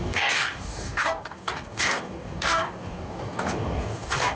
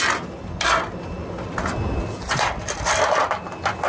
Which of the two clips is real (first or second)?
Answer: second